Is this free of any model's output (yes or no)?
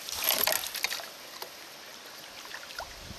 yes